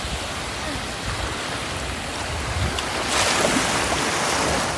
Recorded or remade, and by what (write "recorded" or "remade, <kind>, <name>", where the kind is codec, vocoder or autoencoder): recorded